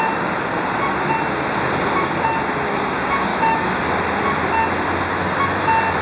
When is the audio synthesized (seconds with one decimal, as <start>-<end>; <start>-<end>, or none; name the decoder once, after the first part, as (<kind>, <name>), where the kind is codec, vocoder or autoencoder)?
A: 3.3-3.8 (autoencoder, DAC-VAE)